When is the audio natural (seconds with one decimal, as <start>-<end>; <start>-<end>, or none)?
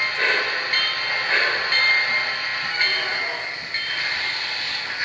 0.0-5.0